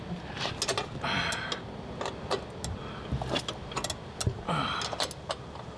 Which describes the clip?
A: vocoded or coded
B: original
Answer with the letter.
B